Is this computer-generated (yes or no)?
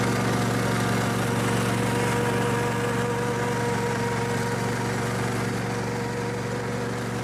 no